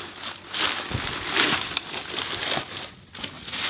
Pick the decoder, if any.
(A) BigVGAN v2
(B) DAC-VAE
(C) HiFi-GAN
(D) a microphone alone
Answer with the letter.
D